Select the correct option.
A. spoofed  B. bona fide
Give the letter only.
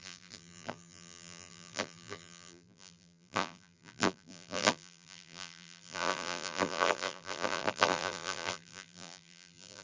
A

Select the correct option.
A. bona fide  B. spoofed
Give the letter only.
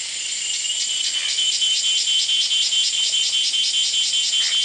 A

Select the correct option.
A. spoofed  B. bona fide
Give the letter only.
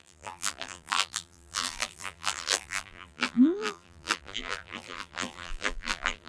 A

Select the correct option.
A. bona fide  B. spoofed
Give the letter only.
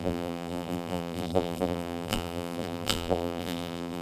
B